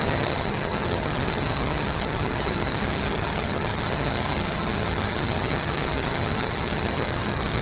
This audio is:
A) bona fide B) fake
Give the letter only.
B